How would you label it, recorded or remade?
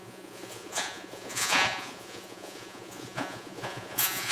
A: remade